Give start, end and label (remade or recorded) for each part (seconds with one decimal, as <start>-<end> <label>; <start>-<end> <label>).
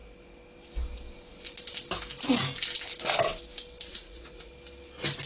0.0-3.9 recorded; 3.9-4.5 remade; 4.5-5.3 recorded